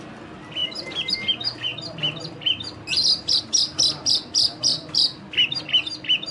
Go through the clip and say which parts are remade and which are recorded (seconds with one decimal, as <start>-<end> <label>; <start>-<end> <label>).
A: 0.0-6.3 recorded